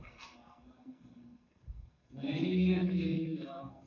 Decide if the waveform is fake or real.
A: fake